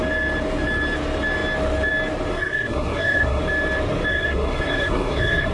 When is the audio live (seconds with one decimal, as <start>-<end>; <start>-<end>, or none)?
0.0-2.3; 3.4-4.1